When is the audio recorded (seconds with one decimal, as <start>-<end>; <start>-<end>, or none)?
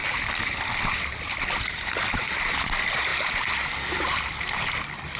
0.0-5.2